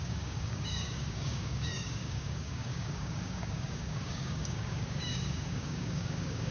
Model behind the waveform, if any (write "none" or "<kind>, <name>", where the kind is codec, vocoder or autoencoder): codec, DAC